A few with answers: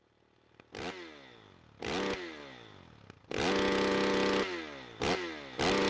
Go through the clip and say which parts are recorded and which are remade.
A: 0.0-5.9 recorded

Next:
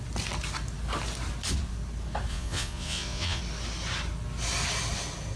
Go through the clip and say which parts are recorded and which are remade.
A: 0.0-2.3 recorded; 2.3-3.4 remade; 3.4-5.4 recorded